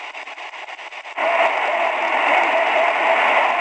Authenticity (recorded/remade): recorded